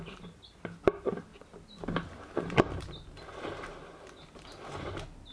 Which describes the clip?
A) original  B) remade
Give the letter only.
A